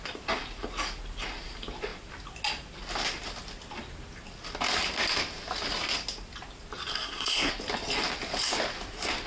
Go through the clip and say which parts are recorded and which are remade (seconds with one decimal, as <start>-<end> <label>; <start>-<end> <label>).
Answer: 0.0-6.9 recorded; 6.9-7.5 remade; 7.5-9.3 recorded